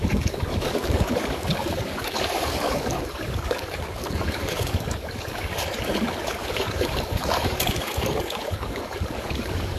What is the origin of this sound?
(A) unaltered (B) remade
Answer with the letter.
B